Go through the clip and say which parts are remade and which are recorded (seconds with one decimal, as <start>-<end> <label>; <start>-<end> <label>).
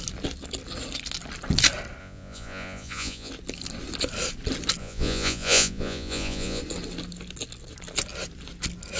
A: 0.0-2.0 recorded; 2.0-3.3 remade; 3.3-4.8 recorded; 4.8-6.6 remade; 6.6-9.0 recorded